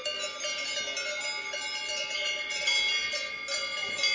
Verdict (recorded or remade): recorded